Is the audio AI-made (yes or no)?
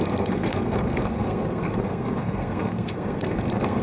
yes